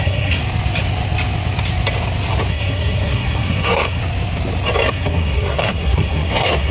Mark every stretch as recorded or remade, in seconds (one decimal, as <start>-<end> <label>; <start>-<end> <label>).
0.0-0.4 remade; 0.4-2.5 recorded; 2.5-4.0 remade; 4.0-4.9 recorded; 4.9-6.7 remade